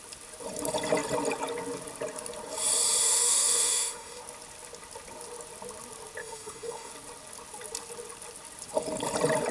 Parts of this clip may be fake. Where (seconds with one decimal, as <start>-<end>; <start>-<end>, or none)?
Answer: 3.0-4.2; 6.2-6.9